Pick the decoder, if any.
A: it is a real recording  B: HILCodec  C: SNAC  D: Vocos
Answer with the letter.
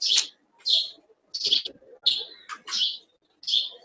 A